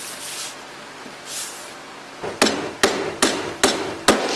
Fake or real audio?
real